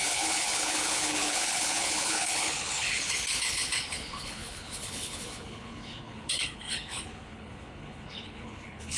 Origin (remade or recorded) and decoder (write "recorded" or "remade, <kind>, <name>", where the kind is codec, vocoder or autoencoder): remade, codec, HILCodec